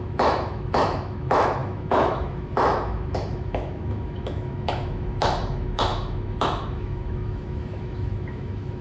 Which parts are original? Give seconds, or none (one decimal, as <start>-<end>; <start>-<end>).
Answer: none